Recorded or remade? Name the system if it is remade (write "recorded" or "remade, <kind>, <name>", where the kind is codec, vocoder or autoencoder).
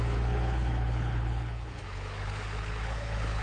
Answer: remade, codec, HILCodec